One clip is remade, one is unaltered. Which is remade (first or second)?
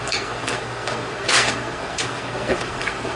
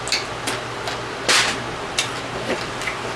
first